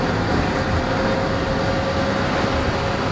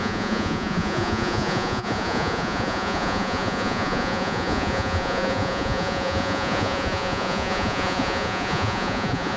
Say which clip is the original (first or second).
first